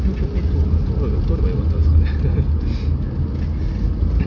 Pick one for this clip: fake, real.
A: real